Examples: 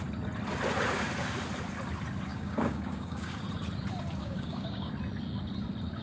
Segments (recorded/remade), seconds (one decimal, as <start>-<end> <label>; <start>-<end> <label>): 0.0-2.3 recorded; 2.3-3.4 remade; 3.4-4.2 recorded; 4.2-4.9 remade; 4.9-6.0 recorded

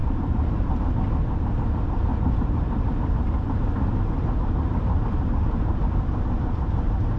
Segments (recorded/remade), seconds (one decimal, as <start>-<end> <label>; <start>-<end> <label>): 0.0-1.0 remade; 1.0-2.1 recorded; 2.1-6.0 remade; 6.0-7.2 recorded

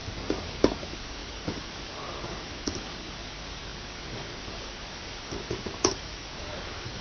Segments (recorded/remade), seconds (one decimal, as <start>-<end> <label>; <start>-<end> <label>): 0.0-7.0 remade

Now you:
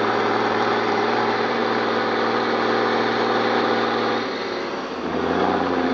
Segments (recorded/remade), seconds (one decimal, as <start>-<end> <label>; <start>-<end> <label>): 0.0-1.6 remade; 1.6-4.7 recorded; 4.7-5.9 remade

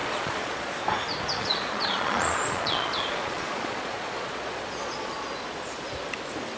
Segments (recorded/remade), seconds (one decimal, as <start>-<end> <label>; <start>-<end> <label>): 0.0-0.7 remade; 0.7-1.4 recorded; 1.4-5.1 remade; 5.1-6.6 recorded